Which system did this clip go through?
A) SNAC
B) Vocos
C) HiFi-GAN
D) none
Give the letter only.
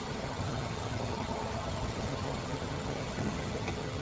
C